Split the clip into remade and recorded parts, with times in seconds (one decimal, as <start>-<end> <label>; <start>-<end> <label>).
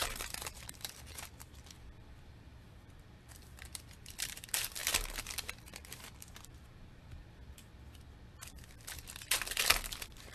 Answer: 0.0-4.8 remade; 4.8-5.8 recorded; 5.8-10.3 remade